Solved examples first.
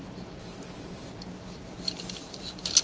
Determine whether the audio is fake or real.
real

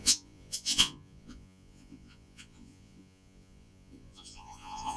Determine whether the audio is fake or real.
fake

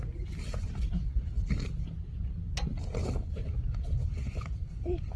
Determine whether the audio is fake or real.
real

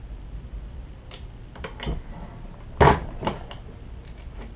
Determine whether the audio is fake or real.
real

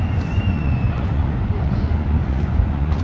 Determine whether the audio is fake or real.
fake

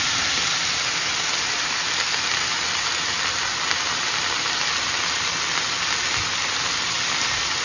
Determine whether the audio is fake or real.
real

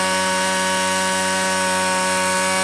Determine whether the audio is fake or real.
real